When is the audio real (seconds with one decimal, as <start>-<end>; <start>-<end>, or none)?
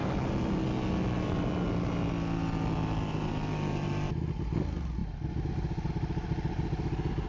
0.0-7.3